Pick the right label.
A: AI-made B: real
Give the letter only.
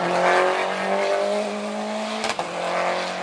B